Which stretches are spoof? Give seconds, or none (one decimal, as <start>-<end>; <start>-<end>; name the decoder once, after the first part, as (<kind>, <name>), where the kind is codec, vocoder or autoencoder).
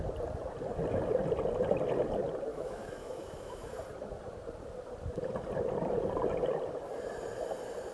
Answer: 2.5-3.7 (autoencoder, DAC-VAE)